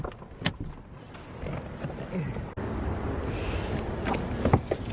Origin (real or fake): real